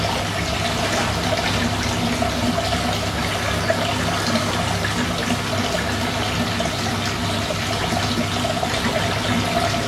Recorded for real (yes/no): yes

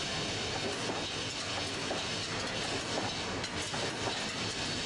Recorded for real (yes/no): yes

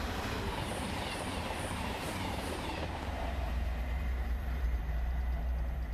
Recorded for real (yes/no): no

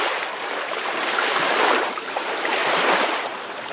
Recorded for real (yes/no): no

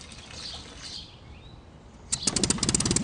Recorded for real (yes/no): yes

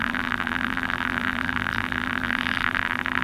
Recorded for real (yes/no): no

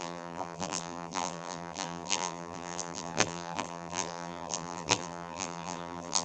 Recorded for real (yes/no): no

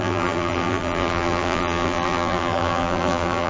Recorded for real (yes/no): no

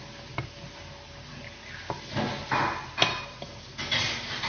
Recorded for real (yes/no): yes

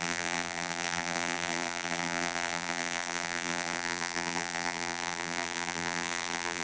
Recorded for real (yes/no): no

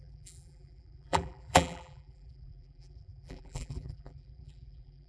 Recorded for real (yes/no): no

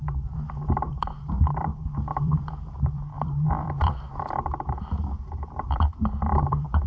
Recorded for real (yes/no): no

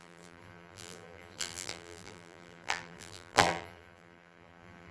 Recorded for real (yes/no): no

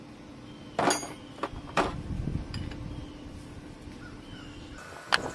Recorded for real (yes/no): yes